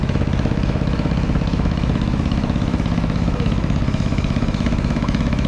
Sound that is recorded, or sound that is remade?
remade